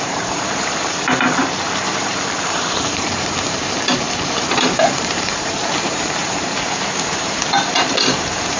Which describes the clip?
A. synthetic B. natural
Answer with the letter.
A